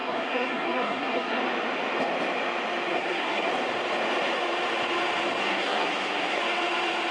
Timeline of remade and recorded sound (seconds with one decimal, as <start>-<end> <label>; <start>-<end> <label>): 0.0-1.4 remade; 1.4-2.9 recorded; 2.9-3.5 remade; 3.5-5.4 recorded; 5.4-6.4 remade; 6.4-7.1 recorded